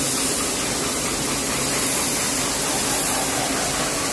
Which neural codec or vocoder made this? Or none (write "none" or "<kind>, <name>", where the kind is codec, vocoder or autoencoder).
none